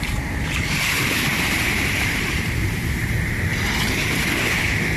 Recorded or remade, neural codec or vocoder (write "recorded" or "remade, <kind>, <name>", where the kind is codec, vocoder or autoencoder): remade, vocoder, BigVGAN v2